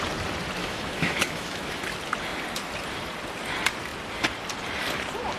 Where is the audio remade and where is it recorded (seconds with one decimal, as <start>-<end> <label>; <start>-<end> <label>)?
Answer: 0.0-0.6 recorded; 0.6-1.8 remade; 1.8-5.4 recorded